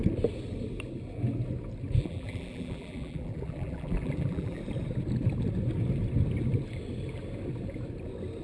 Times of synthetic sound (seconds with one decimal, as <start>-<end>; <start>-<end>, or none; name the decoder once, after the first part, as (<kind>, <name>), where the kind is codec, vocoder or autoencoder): 2.0-4.6 (vocoder, BigVGAN v2)